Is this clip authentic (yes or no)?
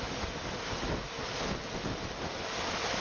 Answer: yes